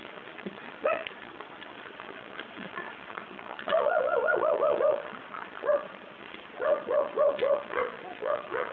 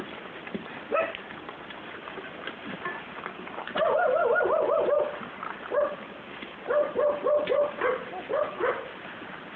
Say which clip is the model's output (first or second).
first